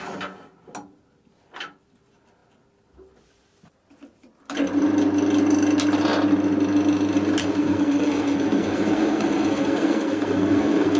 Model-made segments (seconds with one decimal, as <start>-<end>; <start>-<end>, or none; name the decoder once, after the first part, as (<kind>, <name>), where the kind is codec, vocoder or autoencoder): 7.4-11.0 (codec, SNAC)

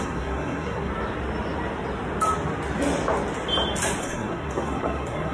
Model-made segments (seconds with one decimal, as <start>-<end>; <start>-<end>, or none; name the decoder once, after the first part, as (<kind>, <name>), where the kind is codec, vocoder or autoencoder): 0.0-0.9 (codec, SNAC); 4.0-5.3

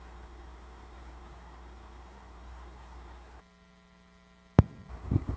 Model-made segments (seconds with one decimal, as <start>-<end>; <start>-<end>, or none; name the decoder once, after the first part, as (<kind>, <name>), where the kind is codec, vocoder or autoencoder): 0.0-3.4 (codec, SNAC); 4.9-5.4

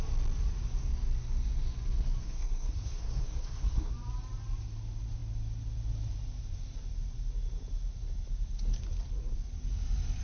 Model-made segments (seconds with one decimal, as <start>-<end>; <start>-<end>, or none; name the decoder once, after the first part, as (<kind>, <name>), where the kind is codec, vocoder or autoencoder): 2.2-3.9 (codec, SNAC)

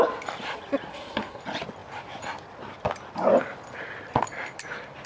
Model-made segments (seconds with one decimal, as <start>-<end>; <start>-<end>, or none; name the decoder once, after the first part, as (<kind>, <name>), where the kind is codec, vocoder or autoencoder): 0.9-1.4 (codec, SNAC)